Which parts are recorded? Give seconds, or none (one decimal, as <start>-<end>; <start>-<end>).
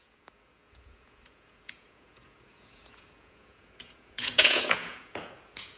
none